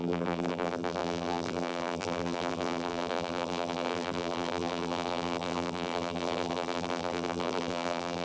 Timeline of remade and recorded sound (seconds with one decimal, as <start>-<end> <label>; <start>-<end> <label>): 0.0-8.2 remade